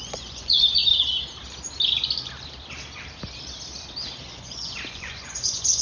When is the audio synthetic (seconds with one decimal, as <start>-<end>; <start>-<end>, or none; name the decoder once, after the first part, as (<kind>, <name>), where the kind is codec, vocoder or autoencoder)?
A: 0.0-0.8 (vocoder, Vocos); 4.3-5.8

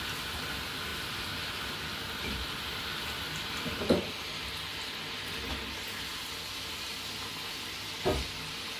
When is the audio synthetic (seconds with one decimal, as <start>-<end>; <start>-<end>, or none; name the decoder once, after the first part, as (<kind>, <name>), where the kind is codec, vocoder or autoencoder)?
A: none

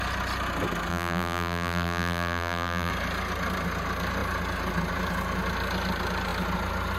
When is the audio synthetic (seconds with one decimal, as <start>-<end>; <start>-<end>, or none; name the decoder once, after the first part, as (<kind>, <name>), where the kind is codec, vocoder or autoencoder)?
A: 0.9-2.9 (vocoder, BigVGAN v2)

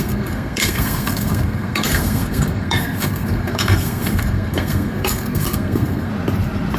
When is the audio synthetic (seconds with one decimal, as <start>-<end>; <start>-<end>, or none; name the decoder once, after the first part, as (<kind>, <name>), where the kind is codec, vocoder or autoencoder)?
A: 0.0-6.1 (codec, SNAC)

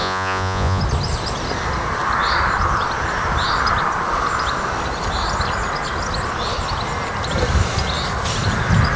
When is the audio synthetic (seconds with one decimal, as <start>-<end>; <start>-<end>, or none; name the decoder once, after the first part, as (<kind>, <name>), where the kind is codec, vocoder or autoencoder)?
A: 0.0-0.8 (vocoder, Vocos)